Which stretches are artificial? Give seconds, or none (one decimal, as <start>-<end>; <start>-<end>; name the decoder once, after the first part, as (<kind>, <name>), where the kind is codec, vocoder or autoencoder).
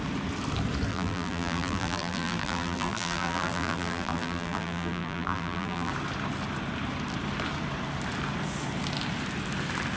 0.9-5.9 (vocoder, BigVGAN v2)